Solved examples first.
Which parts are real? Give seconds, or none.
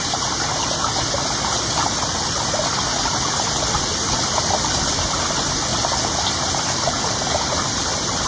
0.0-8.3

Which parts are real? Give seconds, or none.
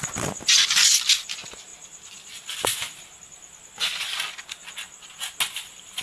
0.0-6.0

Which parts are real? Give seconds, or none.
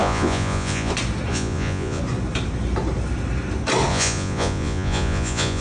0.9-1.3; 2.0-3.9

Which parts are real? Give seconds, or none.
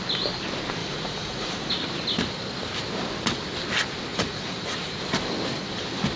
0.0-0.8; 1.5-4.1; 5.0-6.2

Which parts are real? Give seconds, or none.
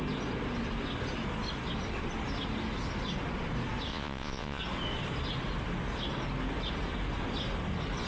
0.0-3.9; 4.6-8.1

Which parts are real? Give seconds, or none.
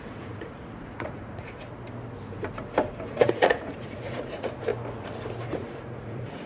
1.6-3.1; 4.7-5.4